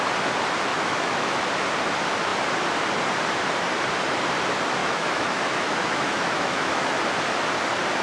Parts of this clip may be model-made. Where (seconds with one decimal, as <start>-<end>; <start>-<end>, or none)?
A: 0.7-1.4; 4.8-6.9